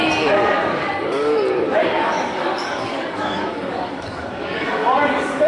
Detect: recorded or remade remade